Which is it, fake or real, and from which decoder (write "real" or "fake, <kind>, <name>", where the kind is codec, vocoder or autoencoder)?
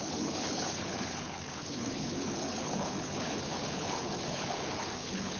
fake, codec, HILCodec